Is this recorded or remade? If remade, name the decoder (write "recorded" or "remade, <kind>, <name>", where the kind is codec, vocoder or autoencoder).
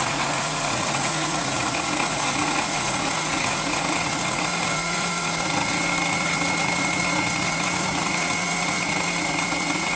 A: remade, vocoder, Vocos